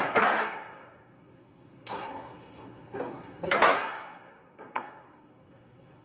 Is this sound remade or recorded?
remade